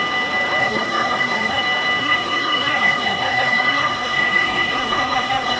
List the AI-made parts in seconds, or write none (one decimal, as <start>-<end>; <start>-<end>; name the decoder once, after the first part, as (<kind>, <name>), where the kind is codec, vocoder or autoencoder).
0.6-1.6 (codec, SNAC); 2.0-5.6